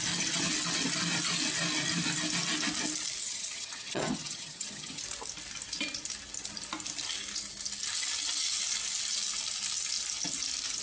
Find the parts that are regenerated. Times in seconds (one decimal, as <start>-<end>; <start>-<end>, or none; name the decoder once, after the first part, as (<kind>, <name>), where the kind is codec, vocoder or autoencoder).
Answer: 3.2-5.0 (vocoder, HiFi-GAN)